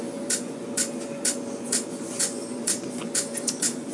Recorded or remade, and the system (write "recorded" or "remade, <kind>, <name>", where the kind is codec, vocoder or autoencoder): remade, vocoder, Vocos